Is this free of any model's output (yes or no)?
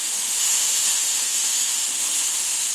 no